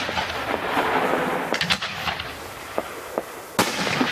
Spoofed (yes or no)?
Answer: no